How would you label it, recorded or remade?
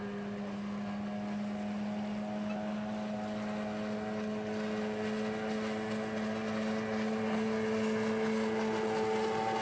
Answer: recorded